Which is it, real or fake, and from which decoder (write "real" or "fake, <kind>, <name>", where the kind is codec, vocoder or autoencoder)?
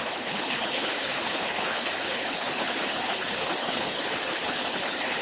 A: fake, codec, HILCodec